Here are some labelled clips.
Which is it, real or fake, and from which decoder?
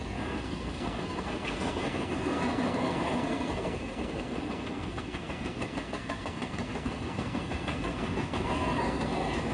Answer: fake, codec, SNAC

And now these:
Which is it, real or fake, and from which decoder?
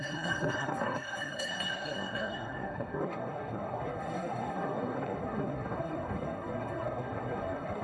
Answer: fake, codec, SNAC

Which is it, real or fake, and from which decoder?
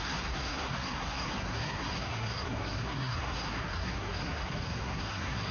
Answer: fake, codec, SNAC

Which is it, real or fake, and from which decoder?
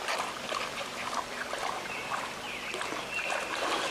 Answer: real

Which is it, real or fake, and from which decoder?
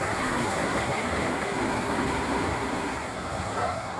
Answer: fake, codec, SNAC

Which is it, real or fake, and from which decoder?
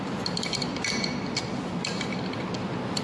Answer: real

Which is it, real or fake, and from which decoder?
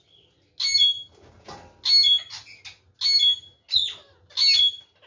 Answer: real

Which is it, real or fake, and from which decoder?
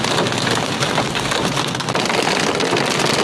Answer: real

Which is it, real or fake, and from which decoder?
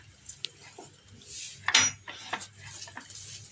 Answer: real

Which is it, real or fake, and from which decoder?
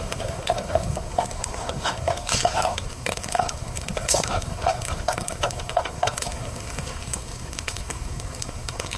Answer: fake, codec, SNAC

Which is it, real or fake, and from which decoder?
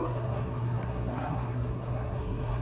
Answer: fake, codec, SNAC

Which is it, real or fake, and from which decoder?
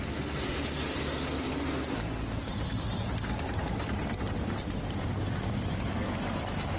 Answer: real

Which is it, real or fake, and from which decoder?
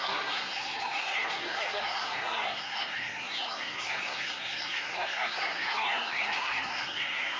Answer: fake, codec, SNAC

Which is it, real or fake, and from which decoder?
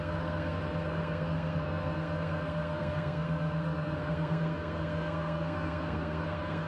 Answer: fake, codec, SNAC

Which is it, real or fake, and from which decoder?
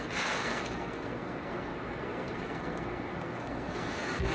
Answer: fake, codec, SNAC